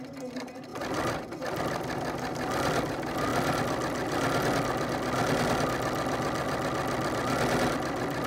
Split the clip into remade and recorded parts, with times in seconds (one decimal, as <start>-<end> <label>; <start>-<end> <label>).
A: 0.0-0.7 recorded; 0.7-1.6 remade; 1.6-8.3 recorded